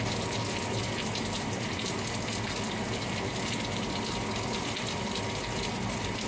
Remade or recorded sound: recorded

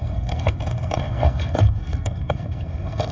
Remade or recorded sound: remade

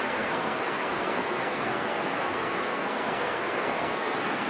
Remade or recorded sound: remade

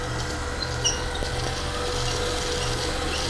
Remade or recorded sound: recorded